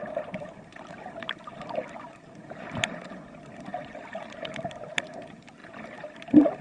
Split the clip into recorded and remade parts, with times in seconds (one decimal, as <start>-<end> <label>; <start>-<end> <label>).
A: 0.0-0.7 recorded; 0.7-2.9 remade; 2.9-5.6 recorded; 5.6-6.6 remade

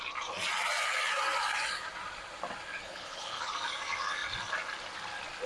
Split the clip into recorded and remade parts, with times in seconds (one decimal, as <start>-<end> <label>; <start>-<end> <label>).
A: 0.0-2.8 recorded; 2.8-3.5 remade; 3.5-5.5 recorded

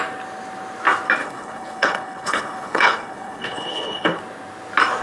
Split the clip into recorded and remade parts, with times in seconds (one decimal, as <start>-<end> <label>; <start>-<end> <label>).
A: 0.0-1.2 recorded; 1.2-4.2 remade; 4.2-5.0 recorded

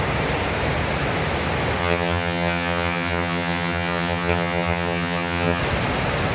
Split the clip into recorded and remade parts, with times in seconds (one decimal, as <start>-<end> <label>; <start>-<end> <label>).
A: 0.0-1.8 recorded; 1.8-5.6 remade; 5.6-6.3 recorded

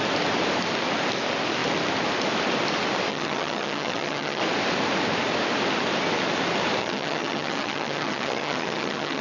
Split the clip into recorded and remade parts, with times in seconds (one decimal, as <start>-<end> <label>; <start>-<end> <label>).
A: 0.0-3.1 recorded; 3.1-4.4 remade; 4.4-6.8 recorded; 6.8-9.2 remade

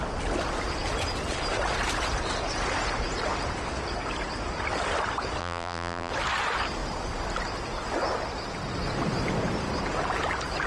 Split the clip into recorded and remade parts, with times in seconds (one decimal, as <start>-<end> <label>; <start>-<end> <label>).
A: 0.0-5.4 recorded; 5.4-6.1 remade; 6.1-10.7 recorded

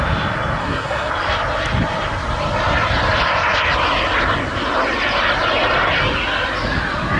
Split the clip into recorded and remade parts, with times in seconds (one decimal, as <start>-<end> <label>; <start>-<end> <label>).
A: 0.0-0.6 recorded; 0.6-1.1 remade; 1.1-7.2 recorded

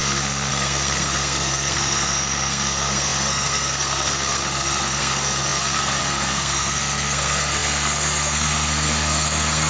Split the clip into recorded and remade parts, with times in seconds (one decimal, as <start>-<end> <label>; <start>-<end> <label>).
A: 0.0-9.7 remade